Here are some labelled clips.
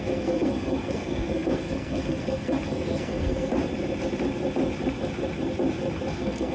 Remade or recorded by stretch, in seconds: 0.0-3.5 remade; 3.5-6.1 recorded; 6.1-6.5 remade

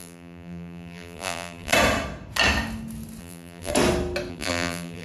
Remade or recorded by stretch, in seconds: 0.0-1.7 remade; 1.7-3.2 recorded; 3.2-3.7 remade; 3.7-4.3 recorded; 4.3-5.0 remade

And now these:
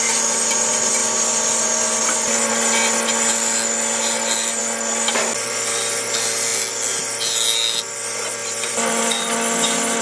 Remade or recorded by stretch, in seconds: 0.0-8.4 recorded; 8.4-9.0 remade; 9.0-10.0 recorded